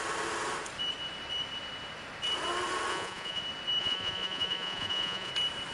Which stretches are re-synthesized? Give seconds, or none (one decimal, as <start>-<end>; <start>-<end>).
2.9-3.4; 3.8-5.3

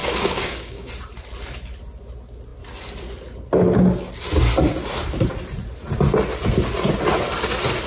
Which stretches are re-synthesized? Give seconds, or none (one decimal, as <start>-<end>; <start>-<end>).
0.0-0.9

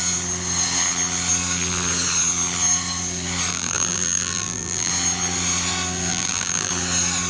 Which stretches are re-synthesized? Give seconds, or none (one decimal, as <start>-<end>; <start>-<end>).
3.5-4.9; 6.1-6.7

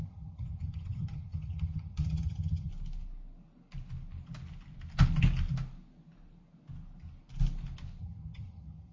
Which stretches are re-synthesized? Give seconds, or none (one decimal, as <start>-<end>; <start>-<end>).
0.0-2.7; 8.0-8.9